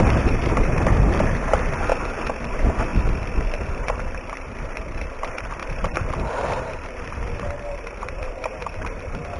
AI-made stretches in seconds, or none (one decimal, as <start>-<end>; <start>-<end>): 0.0-1.9; 2.5-2.9; 3.5-5.6; 6.6-9.4